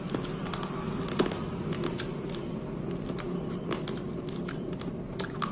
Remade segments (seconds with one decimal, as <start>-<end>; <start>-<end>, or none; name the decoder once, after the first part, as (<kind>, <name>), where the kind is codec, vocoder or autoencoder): none